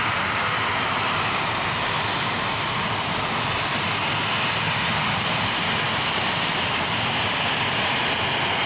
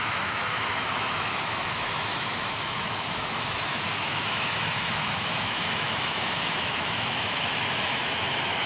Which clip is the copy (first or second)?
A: second